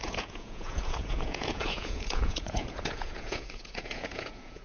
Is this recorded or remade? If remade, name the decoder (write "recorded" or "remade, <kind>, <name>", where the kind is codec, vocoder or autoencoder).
remade, vocoder, Vocos